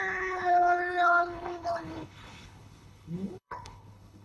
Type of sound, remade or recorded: remade